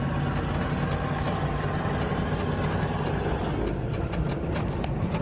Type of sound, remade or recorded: recorded